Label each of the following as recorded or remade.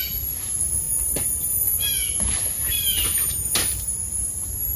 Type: remade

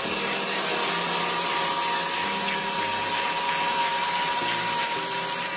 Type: recorded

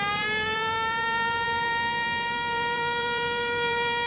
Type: remade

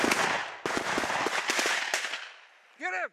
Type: recorded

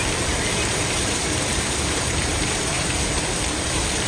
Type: remade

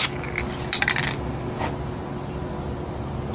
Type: recorded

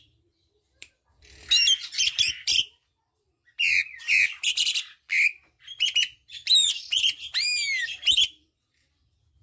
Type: remade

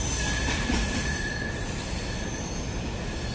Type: remade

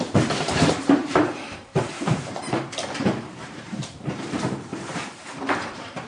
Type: remade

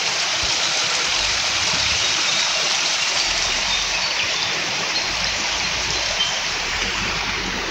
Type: remade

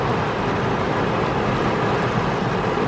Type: recorded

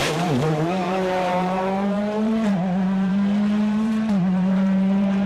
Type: remade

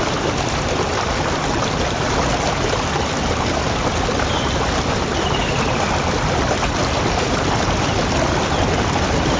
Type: remade